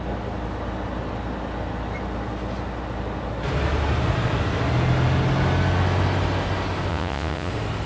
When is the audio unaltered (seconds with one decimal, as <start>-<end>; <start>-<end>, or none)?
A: 0.0-6.9; 7.5-7.9